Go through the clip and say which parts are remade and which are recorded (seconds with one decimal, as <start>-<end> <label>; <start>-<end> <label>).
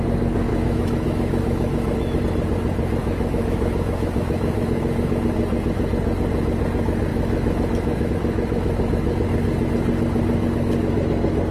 0.0-0.5 recorded; 0.5-2.2 remade; 2.2-3.0 recorded; 3.0-5.1 remade; 5.1-7.1 recorded; 7.1-8.1 remade; 8.1-11.5 recorded